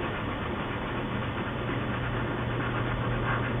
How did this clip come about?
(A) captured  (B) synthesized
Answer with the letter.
A